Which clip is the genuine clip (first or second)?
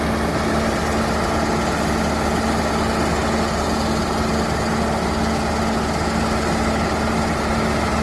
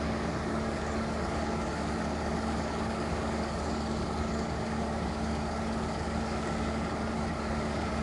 first